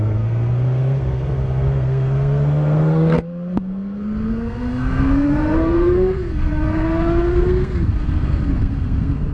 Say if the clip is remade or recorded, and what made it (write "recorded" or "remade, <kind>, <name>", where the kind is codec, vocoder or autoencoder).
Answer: remade, codec, SNAC